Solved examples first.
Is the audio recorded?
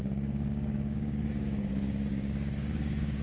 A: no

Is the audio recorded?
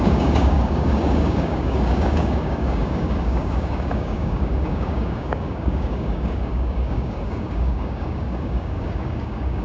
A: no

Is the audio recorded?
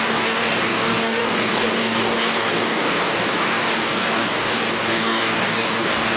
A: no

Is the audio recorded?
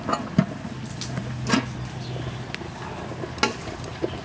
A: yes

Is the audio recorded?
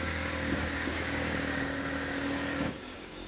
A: no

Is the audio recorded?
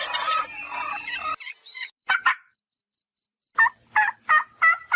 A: yes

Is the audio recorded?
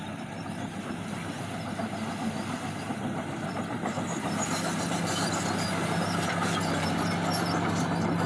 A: yes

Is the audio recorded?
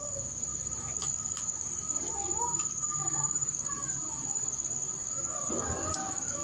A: no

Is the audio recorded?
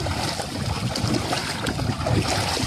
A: yes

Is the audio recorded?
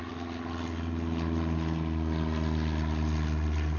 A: yes